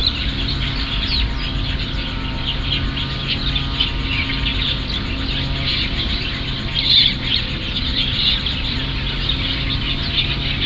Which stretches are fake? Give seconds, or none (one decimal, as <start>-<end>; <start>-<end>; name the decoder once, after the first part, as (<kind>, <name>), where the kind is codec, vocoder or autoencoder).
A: 0.0-0.6 (vocoder, BigVGAN v2); 4.5-8.9

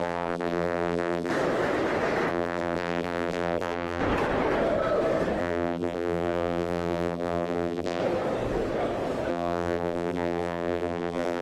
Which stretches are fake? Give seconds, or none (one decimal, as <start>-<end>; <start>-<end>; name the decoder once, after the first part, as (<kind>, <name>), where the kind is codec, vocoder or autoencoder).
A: 0.0-1.3 (vocoder, BigVGAN v2); 2.3-4.0; 5.4-8.0; 9.3-11.4

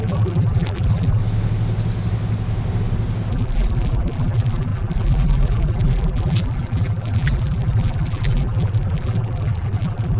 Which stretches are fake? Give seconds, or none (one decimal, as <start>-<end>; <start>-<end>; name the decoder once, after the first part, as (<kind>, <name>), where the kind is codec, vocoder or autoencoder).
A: 0.0-1.2 (vocoder, BigVGAN v2); 3.3-10.2

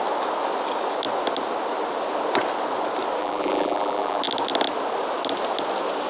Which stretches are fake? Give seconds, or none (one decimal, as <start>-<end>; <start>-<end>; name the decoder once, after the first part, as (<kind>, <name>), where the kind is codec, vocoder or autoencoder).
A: 3.2-4.2 (vocoder, BigVGAN v2)

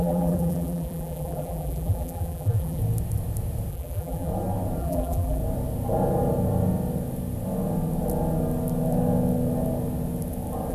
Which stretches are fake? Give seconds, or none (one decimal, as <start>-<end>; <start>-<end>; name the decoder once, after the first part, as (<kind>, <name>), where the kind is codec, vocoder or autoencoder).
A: 0.0-2.8 (vocoder, BigVGAN v2); 3.7-4.3; 4.8-5.4